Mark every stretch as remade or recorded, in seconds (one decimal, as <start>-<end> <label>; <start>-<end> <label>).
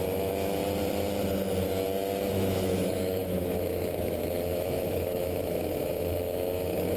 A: 0.0-0.6 remade; 0.6-2.3 recorded; 2.3-7.0 remade